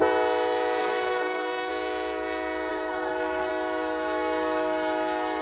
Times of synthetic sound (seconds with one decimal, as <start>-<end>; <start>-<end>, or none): 0.8-1.7; 2.7-3.5